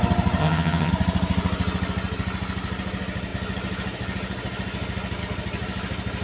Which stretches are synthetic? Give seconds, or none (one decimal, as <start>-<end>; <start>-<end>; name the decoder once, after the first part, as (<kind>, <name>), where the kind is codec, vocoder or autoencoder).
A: 0.4-0.9 (vocoder, HiFi-GAN)